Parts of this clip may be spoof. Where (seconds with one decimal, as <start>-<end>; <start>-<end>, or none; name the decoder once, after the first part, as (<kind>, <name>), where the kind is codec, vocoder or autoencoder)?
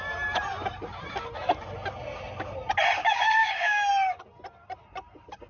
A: 3.0-3.9 (codec, DAC)